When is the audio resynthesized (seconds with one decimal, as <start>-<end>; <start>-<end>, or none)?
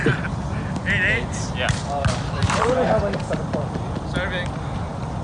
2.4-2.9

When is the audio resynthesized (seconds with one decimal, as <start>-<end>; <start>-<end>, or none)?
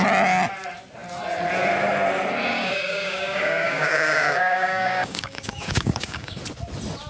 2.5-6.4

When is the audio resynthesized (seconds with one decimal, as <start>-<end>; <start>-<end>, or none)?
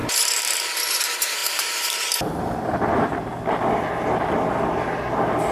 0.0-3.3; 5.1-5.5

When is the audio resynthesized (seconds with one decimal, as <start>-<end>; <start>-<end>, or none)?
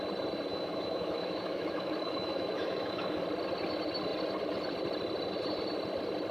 0.5-3.2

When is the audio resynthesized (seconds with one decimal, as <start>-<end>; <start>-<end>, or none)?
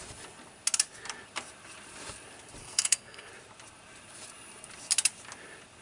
2.6-3.3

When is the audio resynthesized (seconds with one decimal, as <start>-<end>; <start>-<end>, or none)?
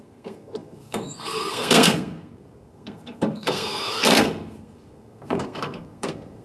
0.0-6.4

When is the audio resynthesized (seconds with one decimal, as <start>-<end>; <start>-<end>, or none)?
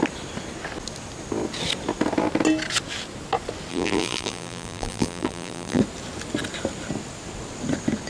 3.7-5.8